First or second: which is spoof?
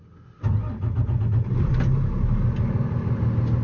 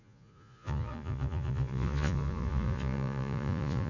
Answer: second